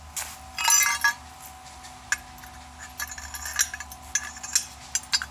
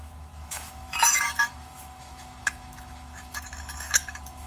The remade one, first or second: second